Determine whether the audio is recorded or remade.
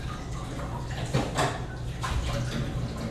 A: recorded